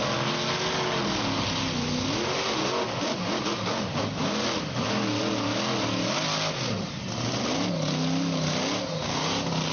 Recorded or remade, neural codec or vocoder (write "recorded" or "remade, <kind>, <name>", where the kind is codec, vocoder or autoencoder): recorded